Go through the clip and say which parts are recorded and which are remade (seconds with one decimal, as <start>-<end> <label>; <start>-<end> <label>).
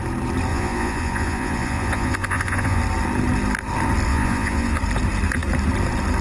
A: 0.0-0.5 recorded; 0.5-2.8 remade; 2.8-4.1 recorded; 4.1-4.8 remade; 4.8-6.2 recorded